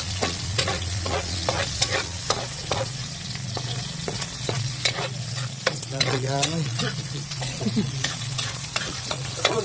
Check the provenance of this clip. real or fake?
fake